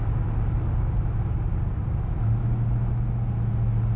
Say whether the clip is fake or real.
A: real